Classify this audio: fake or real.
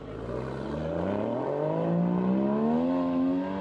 real